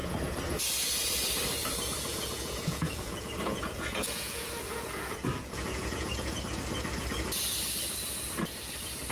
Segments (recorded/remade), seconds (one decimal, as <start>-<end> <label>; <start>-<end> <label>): 0.0-0.6 remade; 0.6-1.6 recorded; 1.6-6.4 remade; 6.4-9.1 recorded